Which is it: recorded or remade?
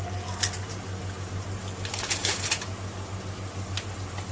recorded